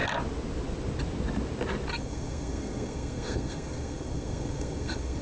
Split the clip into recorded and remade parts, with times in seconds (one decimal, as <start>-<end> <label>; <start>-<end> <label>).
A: 0.0-1.9 recorded; 1.9-5.2 remade